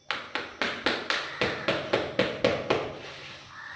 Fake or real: real